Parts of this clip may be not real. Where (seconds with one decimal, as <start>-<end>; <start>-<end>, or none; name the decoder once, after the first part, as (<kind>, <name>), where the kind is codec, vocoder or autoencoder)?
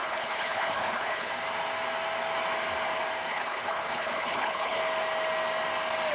0.0-1.3 (codec, HILCodec); 3.3-4.8